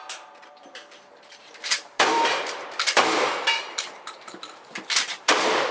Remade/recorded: remade